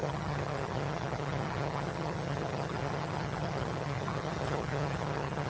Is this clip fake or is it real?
fake